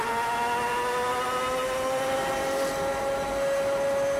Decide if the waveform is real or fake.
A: real